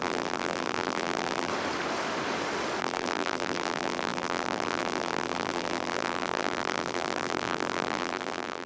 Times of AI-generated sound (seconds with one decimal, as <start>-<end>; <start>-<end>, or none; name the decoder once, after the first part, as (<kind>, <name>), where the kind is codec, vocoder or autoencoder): 0.0-1.5 (vocoder, BigVGAN v2); 2.8-8.7